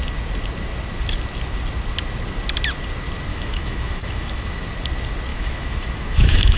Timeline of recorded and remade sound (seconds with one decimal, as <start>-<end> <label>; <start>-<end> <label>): 0.0-3.3 recorded; 3.3-4.6 remade; 4.6-5.3 recorded; 5.3-6.6 remade